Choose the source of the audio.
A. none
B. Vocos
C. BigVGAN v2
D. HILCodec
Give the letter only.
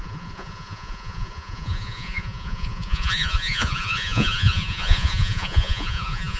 B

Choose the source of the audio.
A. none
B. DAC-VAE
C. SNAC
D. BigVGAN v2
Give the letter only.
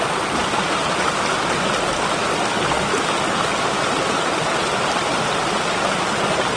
A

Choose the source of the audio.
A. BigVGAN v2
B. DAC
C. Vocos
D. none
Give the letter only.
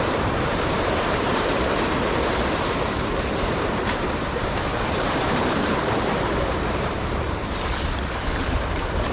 A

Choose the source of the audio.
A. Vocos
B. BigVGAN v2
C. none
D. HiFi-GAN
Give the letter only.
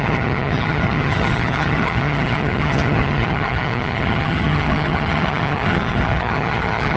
D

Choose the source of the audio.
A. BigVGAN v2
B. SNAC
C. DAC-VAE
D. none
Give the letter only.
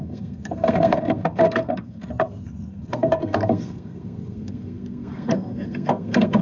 B